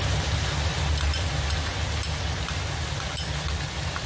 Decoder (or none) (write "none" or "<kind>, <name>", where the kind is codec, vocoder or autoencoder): none